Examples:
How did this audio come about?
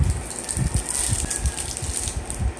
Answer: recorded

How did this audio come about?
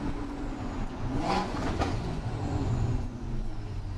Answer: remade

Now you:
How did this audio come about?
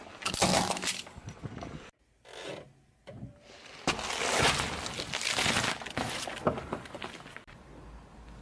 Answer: recorded